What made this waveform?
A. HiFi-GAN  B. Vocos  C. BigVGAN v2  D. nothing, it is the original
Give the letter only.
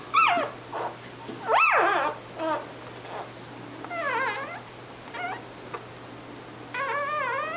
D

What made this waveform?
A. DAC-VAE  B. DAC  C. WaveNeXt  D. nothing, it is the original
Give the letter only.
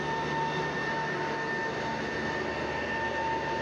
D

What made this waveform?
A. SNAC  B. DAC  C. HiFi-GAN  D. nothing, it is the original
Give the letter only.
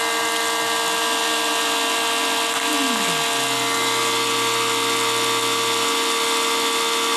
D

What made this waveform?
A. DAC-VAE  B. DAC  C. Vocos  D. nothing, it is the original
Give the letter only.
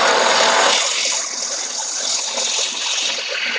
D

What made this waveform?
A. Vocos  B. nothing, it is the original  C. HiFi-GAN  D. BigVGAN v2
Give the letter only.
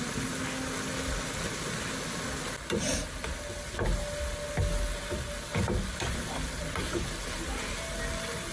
B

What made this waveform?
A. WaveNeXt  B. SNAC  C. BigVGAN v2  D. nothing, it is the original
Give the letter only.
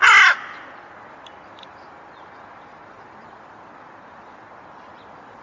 D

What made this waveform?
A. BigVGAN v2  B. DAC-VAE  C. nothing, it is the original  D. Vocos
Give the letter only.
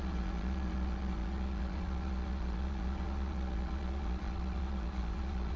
D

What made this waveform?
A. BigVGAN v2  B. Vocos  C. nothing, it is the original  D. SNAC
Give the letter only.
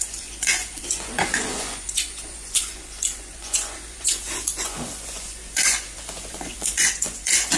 B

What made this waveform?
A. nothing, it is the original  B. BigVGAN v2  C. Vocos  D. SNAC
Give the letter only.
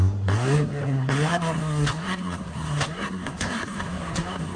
D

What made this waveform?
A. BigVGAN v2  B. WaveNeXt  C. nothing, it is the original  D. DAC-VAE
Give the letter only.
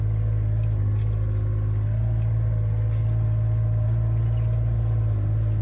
C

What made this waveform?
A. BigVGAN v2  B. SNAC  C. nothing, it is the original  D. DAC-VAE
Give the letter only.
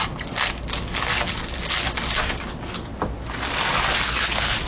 C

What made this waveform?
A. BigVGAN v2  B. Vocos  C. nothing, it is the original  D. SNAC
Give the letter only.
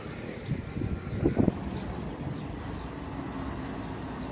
C